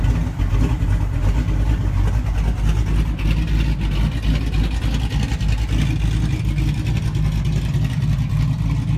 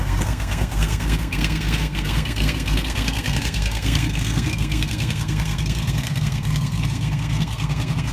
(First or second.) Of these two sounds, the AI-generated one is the second